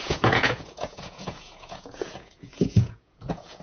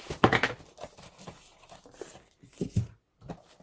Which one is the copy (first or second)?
first